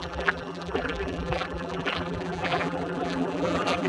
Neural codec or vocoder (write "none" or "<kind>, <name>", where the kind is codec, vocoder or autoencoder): vocoder, BigVGAN v2